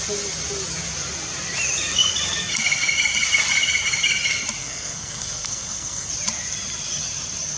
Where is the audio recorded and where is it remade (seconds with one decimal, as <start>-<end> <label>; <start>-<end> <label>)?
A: 0.0-4.6 recorded; 4.6-6.1 remade; 6.1-7.6 recorded